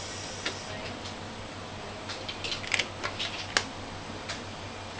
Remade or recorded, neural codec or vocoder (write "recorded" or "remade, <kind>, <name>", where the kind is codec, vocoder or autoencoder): recorded